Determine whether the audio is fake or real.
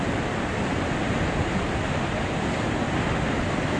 real